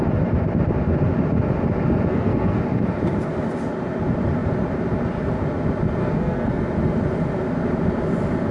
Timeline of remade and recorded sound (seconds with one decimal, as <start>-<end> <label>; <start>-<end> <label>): 0.0-2.1 recorded; 2.1-2.6 remade; 2.6-6.0 recorded; 6.0-6.6 remade; 6.6-8.5 recorded